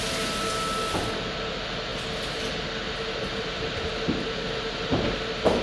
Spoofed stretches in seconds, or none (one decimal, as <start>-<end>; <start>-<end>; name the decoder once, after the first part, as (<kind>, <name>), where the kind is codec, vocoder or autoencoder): none